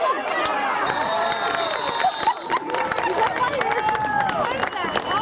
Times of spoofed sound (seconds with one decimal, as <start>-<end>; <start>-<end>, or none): 0.5-3.6